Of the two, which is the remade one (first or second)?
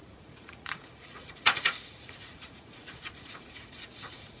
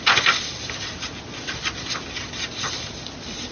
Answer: first